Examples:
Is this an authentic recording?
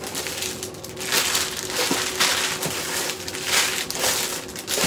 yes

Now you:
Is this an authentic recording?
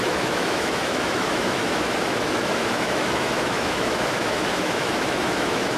no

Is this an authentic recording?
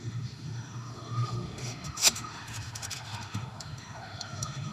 no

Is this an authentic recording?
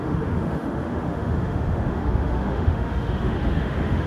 no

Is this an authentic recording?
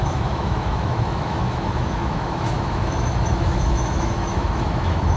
no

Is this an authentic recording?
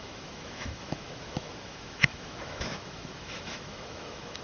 no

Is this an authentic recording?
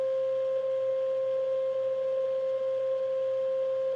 yes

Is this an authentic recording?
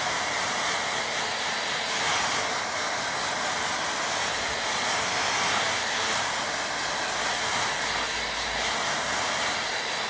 yes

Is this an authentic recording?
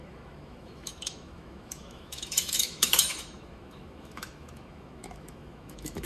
no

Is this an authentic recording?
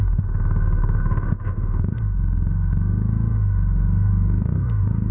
no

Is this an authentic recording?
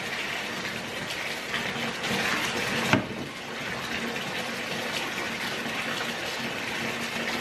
yes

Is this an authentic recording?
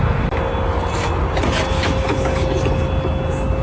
yes